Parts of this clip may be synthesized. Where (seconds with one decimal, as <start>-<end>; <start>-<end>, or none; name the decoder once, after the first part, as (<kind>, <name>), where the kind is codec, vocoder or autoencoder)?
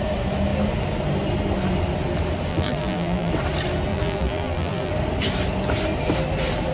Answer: 2.5-3.3 (vocoder, BigVGAN v2); 3.9-4.9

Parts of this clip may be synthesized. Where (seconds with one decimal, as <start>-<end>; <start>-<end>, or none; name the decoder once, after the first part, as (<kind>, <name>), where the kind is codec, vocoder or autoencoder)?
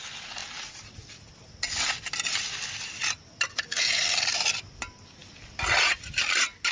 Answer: 0.0-0.4 (vocoder, BigVGAN v2); 2.7-6.7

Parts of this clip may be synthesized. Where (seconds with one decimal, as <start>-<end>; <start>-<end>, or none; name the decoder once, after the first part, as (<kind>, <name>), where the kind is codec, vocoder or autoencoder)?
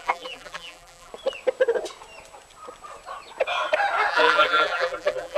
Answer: 0.0-1.1 (vocoder, BigVGAN v2); 4.1-5.4